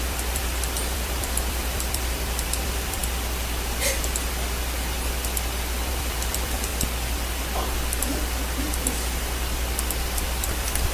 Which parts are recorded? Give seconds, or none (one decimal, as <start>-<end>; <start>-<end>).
3.0-5.9; 6.7-10.2